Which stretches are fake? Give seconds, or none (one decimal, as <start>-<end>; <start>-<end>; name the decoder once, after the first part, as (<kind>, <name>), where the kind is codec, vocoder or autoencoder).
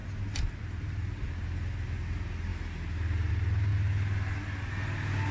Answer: none